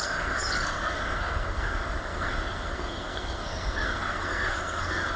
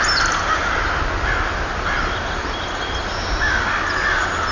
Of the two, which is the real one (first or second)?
second